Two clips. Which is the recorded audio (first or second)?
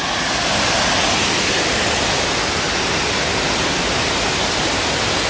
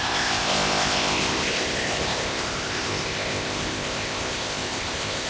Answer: first